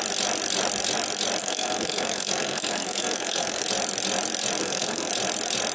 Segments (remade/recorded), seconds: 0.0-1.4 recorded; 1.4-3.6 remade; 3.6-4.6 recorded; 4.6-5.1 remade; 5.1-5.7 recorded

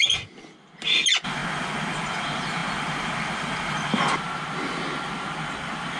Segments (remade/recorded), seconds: 0.0-6.0 recorded

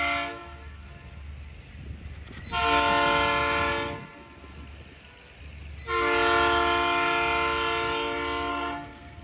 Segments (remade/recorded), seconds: 0.0-8.5 recorded; 8.5-9.2 remade